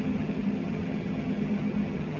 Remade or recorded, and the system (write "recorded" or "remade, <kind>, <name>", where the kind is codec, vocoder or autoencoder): remade, vocoder, HiFi-GAN